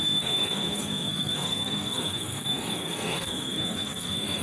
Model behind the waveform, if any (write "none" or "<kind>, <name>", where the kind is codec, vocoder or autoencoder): codec, SNAC